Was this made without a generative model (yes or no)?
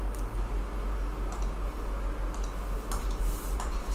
yes